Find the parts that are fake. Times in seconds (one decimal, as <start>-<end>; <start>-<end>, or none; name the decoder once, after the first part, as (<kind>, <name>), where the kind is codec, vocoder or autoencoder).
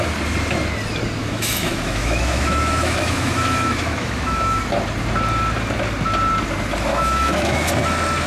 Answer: 1.2-4.6 (autoencoder, DAC-VAE); 6.9-7.7